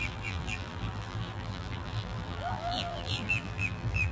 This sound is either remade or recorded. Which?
remade